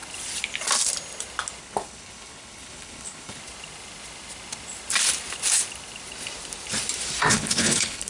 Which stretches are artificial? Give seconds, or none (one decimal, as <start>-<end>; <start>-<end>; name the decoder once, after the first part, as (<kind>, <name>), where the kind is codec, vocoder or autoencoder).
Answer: 1.6-3.4 (codec, HILCodec); 7.3-8.1